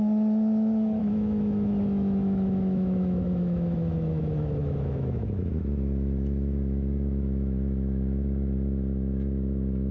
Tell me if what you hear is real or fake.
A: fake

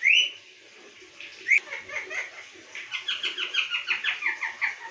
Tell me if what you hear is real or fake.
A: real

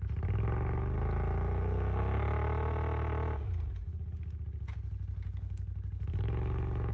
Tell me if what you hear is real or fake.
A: real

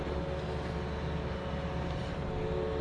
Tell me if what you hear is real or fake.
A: real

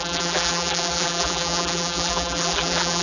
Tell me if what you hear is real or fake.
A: fake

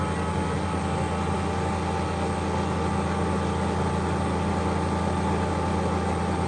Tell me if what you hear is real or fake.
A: real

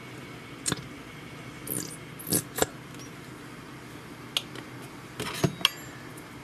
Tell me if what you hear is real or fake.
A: real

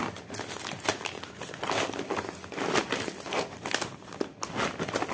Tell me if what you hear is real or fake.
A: real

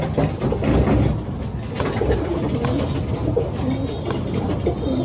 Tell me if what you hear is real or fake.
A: real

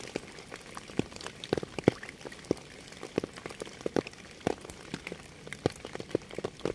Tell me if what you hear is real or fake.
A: real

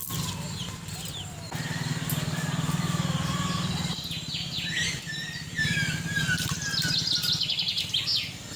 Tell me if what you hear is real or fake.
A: real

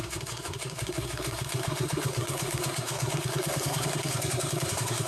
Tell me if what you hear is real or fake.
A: fake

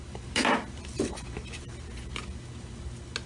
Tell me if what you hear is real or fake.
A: real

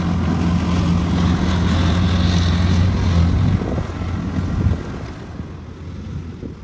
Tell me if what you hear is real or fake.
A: real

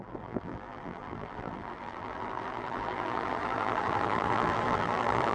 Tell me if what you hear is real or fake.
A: fake